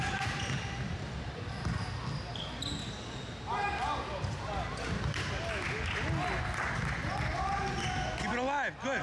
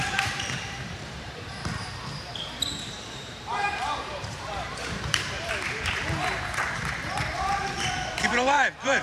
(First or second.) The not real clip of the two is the second